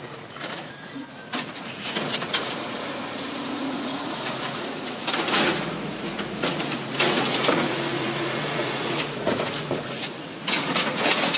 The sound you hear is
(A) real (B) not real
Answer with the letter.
B